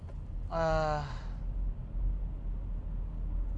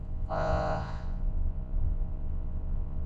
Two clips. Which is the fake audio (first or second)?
second